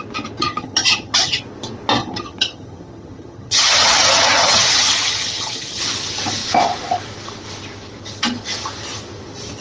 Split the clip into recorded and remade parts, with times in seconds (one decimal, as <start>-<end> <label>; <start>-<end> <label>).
0.0-0.4 recorded; 0.4-1.4 remade; 1.4-2.0 recorded; 2.0-5.8 remade; 5.8-9.6 recorded